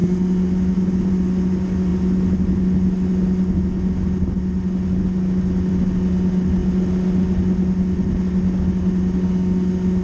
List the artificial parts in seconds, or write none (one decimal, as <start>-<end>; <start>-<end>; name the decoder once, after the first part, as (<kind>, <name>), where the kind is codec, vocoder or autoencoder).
none